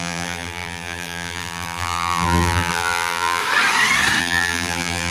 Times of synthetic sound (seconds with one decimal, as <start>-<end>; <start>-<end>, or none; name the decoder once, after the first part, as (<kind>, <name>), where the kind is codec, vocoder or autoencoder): 0.0-3.4 (vocoder, BigVGAN v2); 4.2-5.1